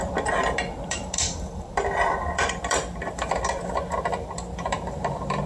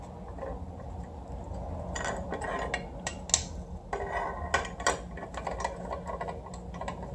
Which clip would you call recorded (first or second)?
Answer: second